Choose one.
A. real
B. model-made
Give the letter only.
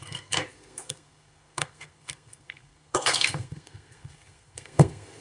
B